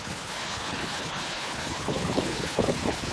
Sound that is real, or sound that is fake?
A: fake